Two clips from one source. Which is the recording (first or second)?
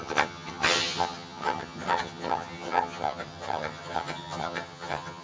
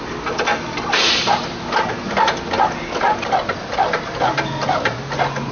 second